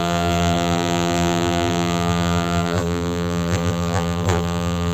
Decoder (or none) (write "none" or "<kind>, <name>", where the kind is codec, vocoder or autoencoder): vocoder, BigVGAN v2